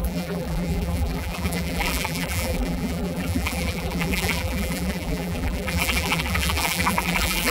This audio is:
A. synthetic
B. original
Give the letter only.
A